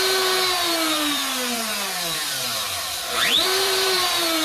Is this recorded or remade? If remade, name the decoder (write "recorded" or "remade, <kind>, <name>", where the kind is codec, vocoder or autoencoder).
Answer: remade, vocoder, BigVGAN v2